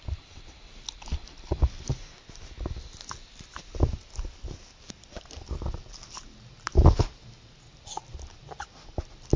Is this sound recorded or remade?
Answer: recorded